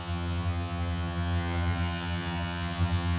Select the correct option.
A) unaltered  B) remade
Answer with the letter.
B